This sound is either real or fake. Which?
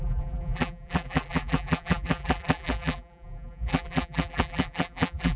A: fake